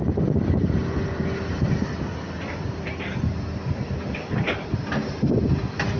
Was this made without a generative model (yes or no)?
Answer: yes